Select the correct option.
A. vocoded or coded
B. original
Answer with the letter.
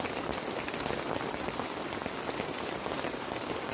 B